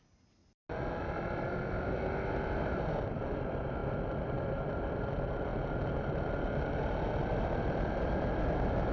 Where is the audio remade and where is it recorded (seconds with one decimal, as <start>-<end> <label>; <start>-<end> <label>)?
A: 0.0-8.9 recorded